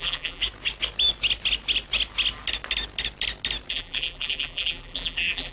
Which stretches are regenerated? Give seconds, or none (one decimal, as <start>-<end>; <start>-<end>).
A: 0.0-0.4; 3.7-5.5